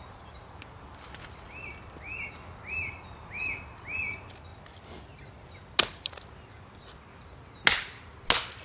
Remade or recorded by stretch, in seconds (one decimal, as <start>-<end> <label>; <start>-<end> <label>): 0.0-8.6 recorded